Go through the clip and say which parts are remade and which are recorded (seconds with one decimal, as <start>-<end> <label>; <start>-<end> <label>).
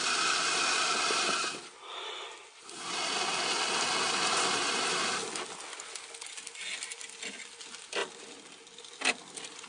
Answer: 0.0-9.7 recorded